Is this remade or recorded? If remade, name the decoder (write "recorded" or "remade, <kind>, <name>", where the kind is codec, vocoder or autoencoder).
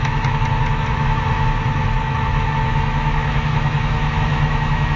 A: remade, autoencoder, DAC-VAE